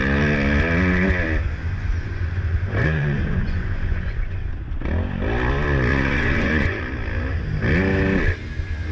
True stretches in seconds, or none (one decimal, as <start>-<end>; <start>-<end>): 0.0-1.6; 4.5-5.9; 6.8-8.9

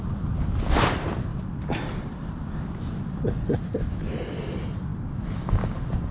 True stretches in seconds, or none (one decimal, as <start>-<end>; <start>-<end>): 0.0-1.3; 2.8-6.1

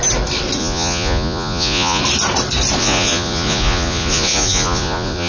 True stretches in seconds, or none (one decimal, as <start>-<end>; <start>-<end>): 0.0-0.6; 2.0-2.8

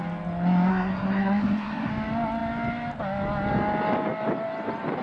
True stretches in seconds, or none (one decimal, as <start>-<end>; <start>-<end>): 0.0-0.7; 1.9-5.0

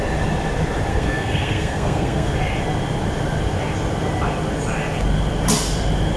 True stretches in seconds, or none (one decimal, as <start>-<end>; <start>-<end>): 0.0-0.9; 2.3-6.2

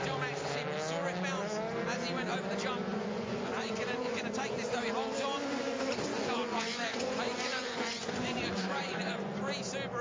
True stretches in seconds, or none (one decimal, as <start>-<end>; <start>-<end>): 0.0-2.9; 4.2-6.1; 9.3-10.0

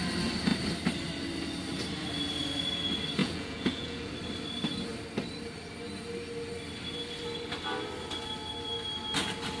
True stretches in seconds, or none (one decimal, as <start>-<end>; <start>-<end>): 0.0-3.2; 4.1-9.6